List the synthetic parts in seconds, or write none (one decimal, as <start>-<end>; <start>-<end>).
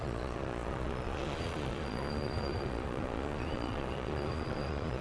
0.0-5.0